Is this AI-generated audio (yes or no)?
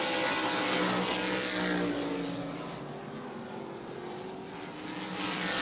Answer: no